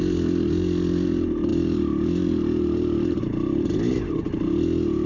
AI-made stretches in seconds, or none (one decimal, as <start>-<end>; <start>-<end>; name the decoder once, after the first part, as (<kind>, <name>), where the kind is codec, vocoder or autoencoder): none